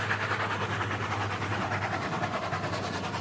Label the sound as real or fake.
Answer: real